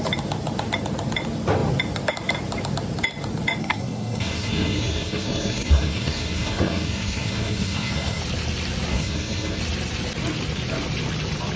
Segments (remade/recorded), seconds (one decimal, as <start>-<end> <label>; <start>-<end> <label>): 0.0-3.6 recorded; 3.6-8.2 remade; 8.2-8.9 recorded; 8.9-9.6 remade; 9.6-11.6 recorded